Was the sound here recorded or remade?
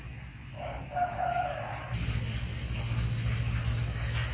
recorded